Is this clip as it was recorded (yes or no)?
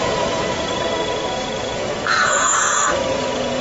no